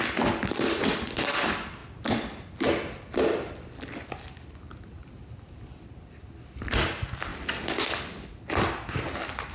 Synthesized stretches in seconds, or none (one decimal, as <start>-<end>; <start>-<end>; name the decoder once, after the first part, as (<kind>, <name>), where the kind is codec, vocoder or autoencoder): none

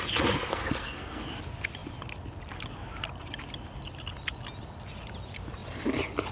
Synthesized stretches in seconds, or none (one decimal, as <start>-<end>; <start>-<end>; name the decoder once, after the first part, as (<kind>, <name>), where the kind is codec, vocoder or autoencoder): 0.5-1.3 (codec, SNAC)

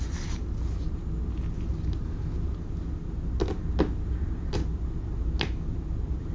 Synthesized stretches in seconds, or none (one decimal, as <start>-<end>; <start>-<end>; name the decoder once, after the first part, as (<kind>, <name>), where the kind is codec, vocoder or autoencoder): none

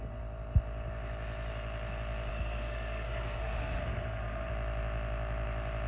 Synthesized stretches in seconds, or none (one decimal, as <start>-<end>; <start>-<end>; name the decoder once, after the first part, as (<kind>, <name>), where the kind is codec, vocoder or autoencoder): 2.3-4.5 (codec, SNAC)

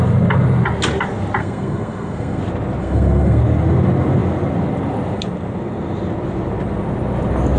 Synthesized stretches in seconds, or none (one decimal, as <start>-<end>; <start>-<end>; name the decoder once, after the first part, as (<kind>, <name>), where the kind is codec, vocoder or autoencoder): 1.4-2.4 (codec, SNAC); 2.8-3.4

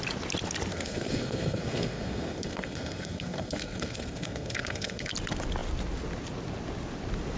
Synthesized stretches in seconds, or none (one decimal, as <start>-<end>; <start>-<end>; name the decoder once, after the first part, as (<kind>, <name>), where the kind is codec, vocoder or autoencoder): 0.7-5.1 (codec, SNAC)

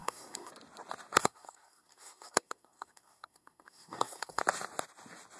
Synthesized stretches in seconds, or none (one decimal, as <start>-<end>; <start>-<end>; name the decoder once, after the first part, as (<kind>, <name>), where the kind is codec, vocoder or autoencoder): 0.0-0.5 (codec, SNAC); 1.2-4.4